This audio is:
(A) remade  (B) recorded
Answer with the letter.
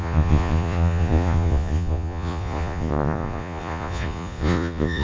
A